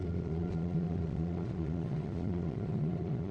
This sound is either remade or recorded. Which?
remade